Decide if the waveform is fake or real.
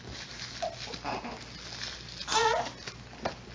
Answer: real